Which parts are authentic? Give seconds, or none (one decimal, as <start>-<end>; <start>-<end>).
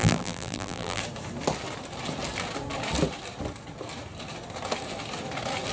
1.0-5.7